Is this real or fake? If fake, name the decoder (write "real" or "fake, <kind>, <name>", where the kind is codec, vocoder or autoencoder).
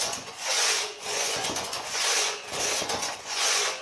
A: fake, vocoder, Vocos